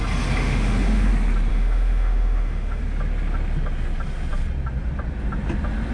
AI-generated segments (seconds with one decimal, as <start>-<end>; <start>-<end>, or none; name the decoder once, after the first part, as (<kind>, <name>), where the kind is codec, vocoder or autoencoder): 0.4-1.1 (autoencoder, DAC-VAE); 1.5-2.8